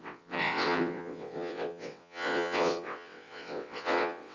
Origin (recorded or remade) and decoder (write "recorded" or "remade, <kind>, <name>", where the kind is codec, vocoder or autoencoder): remade, vocoder, WaveNeXt